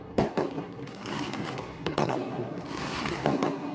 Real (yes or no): no